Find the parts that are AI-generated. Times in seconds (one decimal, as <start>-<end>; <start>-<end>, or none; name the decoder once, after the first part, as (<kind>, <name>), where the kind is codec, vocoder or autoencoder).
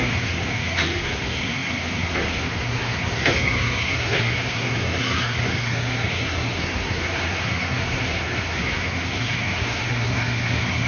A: 0.0-10.9 (codec, SNAC)